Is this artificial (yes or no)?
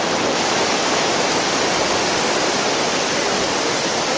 no